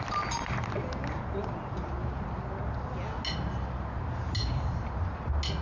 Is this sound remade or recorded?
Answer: recorded